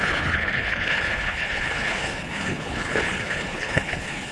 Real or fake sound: fake